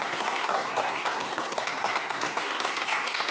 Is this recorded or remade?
remade